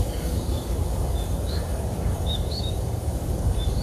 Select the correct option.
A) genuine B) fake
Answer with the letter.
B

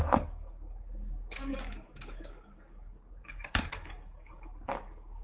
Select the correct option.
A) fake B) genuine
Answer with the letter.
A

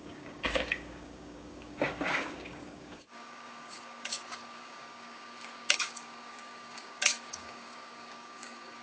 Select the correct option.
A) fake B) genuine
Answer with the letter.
A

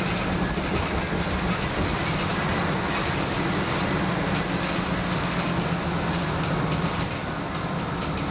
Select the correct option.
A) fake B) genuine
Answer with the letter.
B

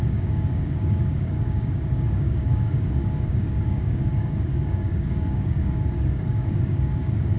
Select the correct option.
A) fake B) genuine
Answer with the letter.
A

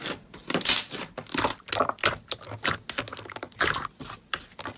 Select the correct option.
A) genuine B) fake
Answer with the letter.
A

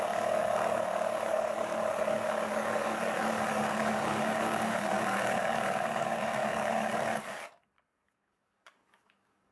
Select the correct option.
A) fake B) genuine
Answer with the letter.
A